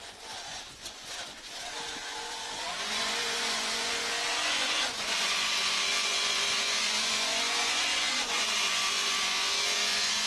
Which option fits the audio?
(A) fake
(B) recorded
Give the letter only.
A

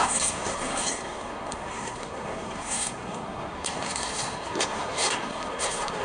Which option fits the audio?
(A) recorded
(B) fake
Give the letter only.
B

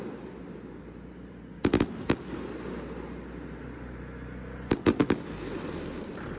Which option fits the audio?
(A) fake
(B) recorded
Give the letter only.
B